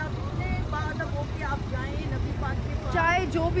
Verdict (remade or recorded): recorded